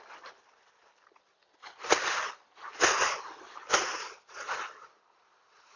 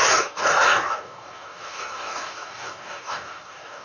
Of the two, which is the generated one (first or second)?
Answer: second